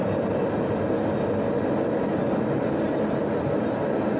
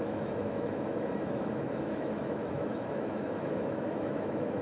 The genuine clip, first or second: first